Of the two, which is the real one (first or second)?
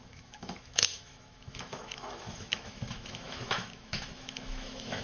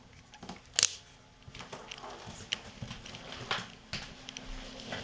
second